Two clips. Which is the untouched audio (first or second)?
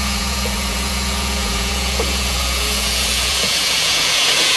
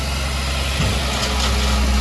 second